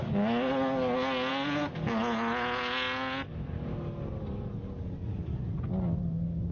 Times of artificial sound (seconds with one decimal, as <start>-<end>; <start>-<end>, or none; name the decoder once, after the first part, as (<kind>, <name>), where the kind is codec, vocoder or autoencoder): none